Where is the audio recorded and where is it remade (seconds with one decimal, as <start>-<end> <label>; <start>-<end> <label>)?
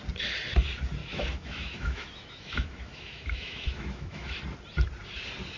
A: 0.0-1.0 recorded; 1.0-4.4 remade; 4.4-5.6 recorded